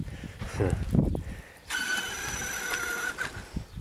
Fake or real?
real